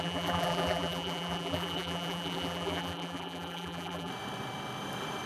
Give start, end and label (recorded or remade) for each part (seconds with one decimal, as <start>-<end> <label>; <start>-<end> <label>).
0.0-4.1 remade; 4.1-5.3 recorded